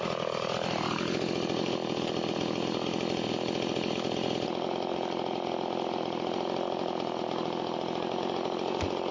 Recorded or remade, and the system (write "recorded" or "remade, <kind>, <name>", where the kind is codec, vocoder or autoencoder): recorded